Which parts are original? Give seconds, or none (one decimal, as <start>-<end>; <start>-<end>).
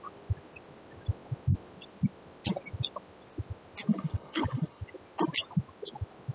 0.0-3.9; 4.8-6.3